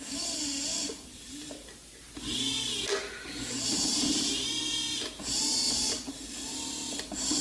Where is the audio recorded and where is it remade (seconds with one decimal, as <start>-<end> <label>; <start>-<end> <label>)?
0.0-7.4 recorded